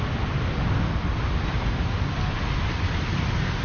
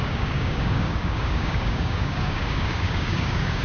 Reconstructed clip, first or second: second